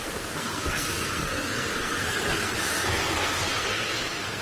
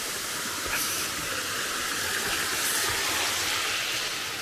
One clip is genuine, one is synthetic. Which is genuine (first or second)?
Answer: second